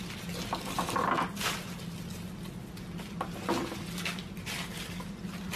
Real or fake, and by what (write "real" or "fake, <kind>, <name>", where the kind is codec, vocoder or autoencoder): real